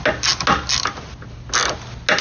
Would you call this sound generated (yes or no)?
no